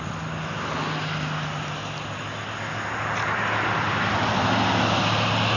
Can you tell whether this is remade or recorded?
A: recorded